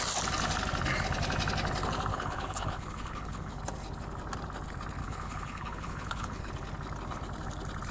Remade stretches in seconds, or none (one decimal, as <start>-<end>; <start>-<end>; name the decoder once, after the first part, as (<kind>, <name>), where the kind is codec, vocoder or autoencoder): 2.1-3.6 (codec, HILCodec); 5.0-6.4